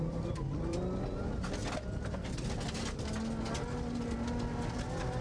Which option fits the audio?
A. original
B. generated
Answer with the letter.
A